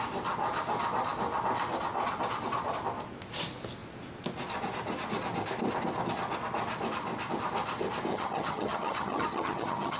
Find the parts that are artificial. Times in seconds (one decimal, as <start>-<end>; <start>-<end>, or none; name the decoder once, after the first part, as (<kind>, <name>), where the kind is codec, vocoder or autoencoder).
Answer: 8.1-10.0 (vocoder, HiFi-GAN)